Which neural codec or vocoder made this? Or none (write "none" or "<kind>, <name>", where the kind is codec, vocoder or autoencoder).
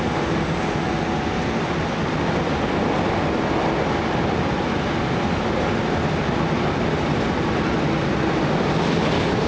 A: none